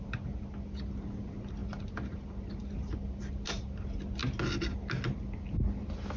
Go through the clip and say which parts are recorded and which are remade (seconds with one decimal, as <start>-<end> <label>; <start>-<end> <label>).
0.0-6.2 recorded

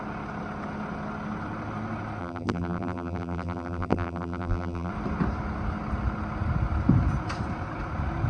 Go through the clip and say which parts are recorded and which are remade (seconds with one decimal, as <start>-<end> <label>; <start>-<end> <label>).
0.0-2.2 recorded; 2.2-4.9 remade; 4.9-8.3 recorded

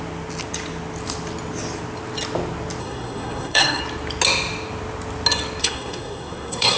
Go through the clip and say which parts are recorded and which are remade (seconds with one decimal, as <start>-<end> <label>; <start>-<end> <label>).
0.0-2.8 recorded; 2.8-3.8 remade; 3.8-5.6 recorded; 5.6-6.8 remade

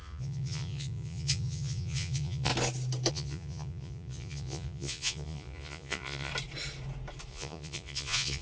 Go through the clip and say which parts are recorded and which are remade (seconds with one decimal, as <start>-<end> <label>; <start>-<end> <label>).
0.0-2.5 remade; 2.5-3.1 recorded; 3.1-6.3 remade; 6.3-7.3 recorded; 7.3-8.4 remade

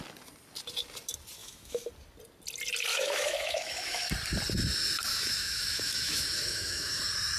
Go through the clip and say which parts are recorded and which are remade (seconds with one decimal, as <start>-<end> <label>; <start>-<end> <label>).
0.0-1.4 recorded; 1.4-1.9 remade; 1.9-2.9 recorded; 2.9-4.1 remade; 4.1-5.1 recorded; 5.1-7.0 remade; 7.0-7.4 recorded

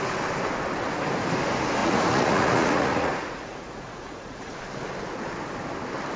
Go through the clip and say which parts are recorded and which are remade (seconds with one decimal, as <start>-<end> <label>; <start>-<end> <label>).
0.0-1.8 recorded; 1.8-4.6 remade; 4.6-6.2 recorded

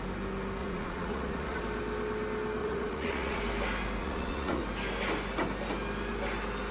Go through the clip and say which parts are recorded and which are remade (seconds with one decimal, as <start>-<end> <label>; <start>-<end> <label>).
0.0-0.6 recorded; 0.6-1.6 remade; 1.6-2.6 recorded; 2.6-3.4 remade; 3.4-4.0 recorded; 4.0-4.6 remade; 4.6-6.7 recorded